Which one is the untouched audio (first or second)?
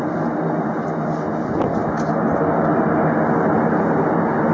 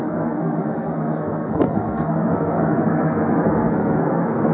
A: first